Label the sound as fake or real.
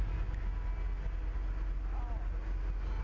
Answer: real